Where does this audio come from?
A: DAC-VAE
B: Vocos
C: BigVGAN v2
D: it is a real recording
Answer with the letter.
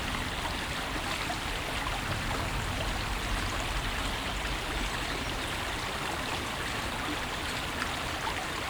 D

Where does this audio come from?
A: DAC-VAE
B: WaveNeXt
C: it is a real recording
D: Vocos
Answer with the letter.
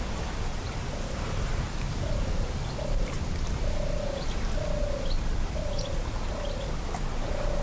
C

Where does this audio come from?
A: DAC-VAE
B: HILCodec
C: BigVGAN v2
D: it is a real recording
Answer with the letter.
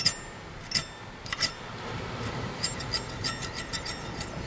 D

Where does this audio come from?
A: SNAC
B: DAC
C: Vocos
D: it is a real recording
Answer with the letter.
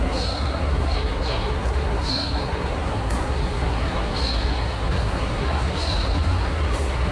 A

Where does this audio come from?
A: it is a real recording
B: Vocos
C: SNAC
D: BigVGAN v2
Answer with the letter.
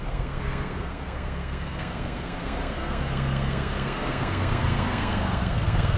C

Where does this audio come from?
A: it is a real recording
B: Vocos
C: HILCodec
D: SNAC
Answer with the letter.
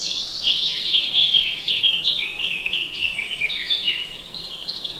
D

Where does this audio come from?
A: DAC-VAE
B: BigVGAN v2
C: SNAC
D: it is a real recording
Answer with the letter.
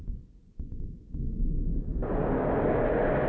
D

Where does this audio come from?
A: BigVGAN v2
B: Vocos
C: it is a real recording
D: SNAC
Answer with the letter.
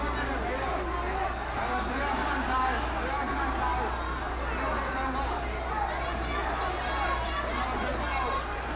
C